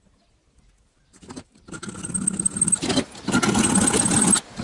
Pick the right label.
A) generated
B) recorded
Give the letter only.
B